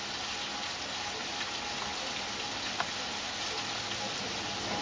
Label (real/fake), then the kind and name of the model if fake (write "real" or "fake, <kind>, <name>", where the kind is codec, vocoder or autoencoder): real